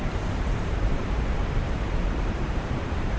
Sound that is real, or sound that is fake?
fake